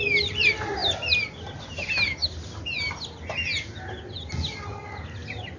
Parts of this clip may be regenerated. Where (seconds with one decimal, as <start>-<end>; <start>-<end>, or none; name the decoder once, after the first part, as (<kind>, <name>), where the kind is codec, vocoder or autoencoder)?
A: none